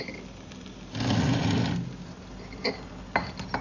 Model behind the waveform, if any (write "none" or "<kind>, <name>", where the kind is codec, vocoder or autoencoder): none